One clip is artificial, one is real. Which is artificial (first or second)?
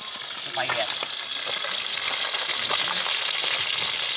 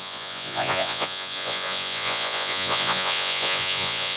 second